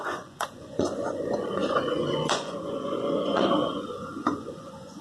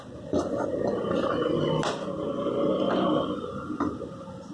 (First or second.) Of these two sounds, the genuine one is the second